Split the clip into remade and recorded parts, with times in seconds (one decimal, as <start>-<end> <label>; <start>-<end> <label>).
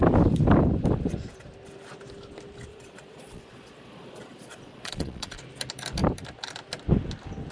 0.0-2.7 recorded; 2.7-5.4 remade; 5.4-7.5 recorded